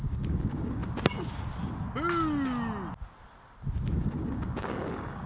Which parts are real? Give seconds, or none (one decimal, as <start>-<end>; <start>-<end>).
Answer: 0.8-4.0